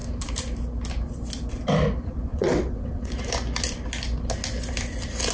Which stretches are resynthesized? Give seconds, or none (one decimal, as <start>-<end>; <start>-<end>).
2.3-3.1